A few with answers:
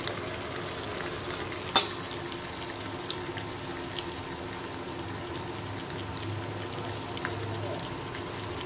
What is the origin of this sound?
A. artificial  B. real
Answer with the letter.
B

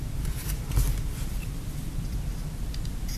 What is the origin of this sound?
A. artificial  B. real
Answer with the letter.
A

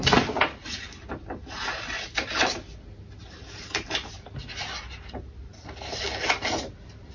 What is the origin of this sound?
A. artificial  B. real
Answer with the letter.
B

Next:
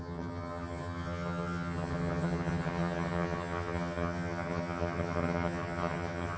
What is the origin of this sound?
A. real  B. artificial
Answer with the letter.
B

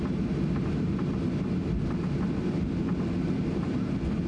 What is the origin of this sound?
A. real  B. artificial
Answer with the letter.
A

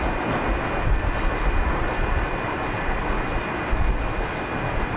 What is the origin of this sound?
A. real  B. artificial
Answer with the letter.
A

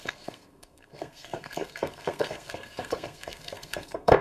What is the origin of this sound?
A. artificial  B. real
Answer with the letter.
A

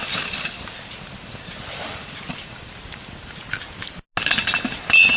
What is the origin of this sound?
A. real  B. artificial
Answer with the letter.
A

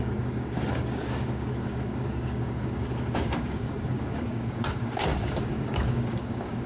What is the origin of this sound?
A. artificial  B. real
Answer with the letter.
A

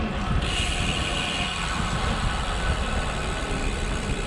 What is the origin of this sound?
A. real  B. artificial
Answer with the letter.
A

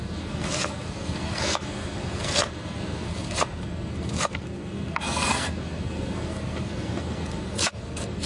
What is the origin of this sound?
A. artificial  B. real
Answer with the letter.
A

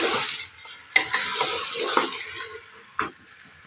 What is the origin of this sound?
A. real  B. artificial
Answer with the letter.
A